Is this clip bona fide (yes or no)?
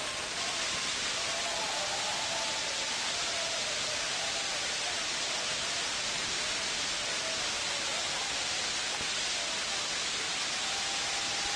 yes